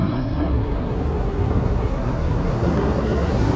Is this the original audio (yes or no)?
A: no